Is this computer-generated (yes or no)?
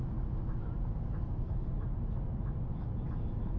no